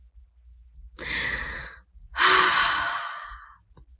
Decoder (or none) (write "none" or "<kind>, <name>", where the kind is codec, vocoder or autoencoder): none